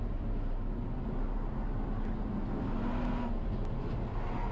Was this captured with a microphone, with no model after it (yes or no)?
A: yes